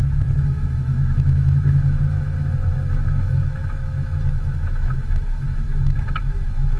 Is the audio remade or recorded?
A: remade